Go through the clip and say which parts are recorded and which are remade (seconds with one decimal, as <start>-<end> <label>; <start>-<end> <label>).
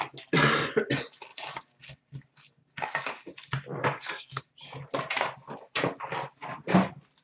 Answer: 0.0-3.8 recorded; 3.8-4.4 remade; 4.4-7.2 recorded